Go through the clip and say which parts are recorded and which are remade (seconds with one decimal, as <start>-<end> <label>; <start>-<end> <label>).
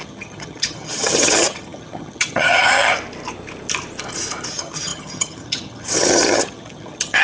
0.0-2.9 remade; 2.9-4.5 recorded; 4.5-7.2 remade